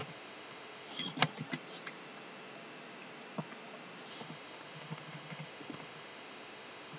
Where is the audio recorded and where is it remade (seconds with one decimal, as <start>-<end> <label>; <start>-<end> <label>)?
0.0-1.0 remade; 1.0-4.1 recorded; 4.1-7.0 remade